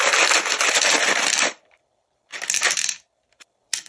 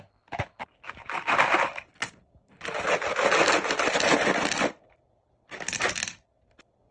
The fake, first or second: first